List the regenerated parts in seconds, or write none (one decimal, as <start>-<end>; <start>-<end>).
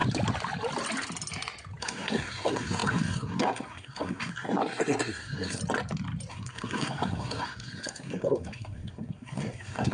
1.8-5.6; 6.3-9.9